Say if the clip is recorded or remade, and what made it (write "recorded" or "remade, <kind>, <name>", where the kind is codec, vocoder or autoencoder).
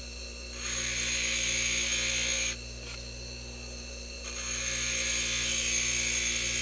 recorded